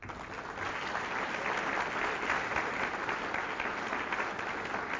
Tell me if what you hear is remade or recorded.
recorded